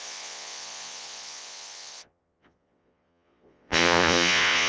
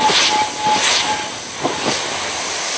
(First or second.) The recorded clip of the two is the second